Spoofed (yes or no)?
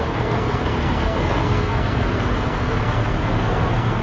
yes